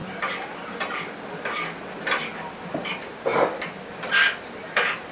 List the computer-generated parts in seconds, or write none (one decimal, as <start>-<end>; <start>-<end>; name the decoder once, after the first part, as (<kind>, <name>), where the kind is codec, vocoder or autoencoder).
none